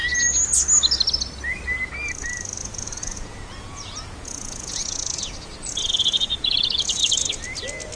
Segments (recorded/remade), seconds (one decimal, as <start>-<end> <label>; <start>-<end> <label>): 0.0-2.6 recorded; 2.6-7.4 remade; 7.4-8.0 recorded